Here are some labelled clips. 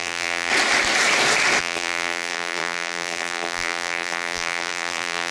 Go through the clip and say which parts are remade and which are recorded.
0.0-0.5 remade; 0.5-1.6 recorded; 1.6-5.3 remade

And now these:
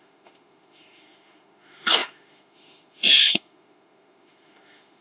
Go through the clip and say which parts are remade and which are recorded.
0.0-5.0 remade

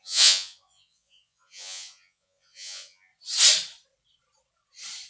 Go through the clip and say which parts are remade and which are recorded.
0.0-3.1 remade; 3.1-5.1 recorded

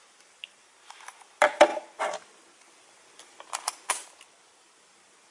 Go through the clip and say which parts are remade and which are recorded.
0.0-5.3 recorded

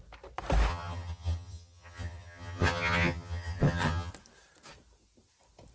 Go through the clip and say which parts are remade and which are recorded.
0.0-0.7 recorded; 0.7-4.1 remade; 4.1-5.7 recorded

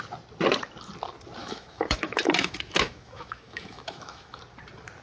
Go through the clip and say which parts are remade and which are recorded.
0.0-1.4 recorded; 1.4-4.4 remade; 4.4-5.0 recorded